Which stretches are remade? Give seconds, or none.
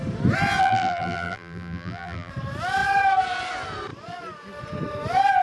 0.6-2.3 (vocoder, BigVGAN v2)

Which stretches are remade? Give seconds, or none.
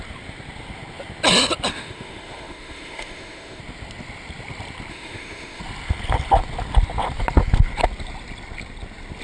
1.7-3.6 (autoencoder, DAC-VAE); 4.9-5.6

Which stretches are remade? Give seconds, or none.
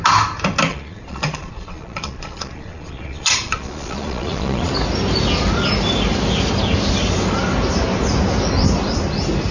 0.7-4.7 (vocoder, Vocos)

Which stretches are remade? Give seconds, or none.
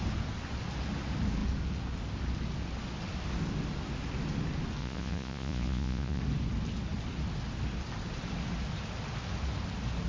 4.8-6.2 (vocoder, Vocos)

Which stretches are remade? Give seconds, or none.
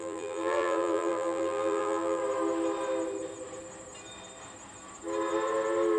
0.0-2.2 (vocoder, BigVGAN v2)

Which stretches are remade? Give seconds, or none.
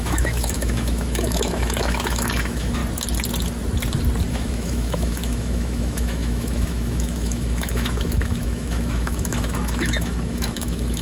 0.0-2.8 (autoencoder, DAC-VAE); 4.3-11.0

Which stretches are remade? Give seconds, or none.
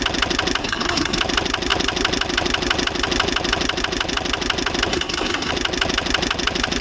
0.6-1.2 (codec, SNAC); 4.9-5.5